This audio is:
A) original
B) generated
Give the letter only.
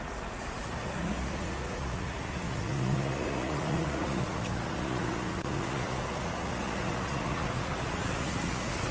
B